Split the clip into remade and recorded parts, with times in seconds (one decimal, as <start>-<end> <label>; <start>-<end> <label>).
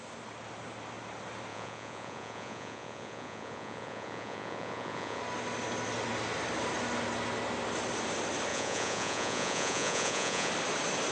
0.0-1.5 recorded; 1.5-5.2 remade; 5.2-8.5 recorded; 8.5-10.5 remade; 10.5-11.1 recorded